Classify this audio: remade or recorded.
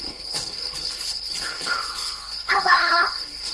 remade